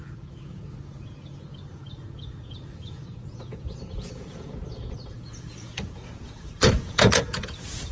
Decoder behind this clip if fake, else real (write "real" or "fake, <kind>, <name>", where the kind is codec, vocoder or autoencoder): fake, vocoder, Vocos